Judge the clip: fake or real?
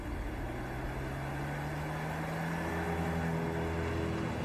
real